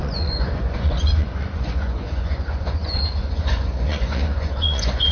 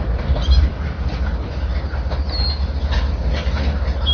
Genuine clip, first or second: second